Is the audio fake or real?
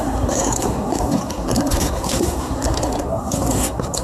fake